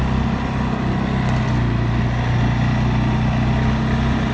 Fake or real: real